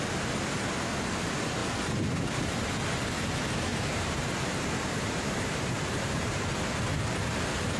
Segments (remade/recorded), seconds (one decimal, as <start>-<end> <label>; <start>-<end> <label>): 0.0-3.7 recorded; 3.7-6.5 remade; 6.5-7.8 recorded